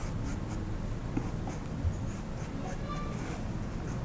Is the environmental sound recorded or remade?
recorded